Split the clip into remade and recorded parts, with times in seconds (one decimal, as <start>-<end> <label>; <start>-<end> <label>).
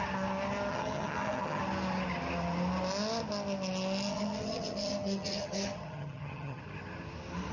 0.0-0.7 recorded; 0.7-1.6 remade; 1.6-4.1 recorded; 4.1-6.6 remade; 6.6-7.5 recorded